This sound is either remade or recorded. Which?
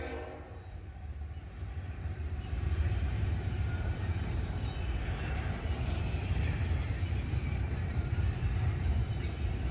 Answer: remade